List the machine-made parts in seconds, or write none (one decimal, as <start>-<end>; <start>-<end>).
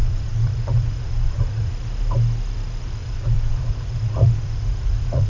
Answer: 0.0-1.7; 3.0-5.3